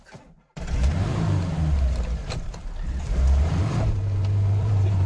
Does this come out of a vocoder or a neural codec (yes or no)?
yes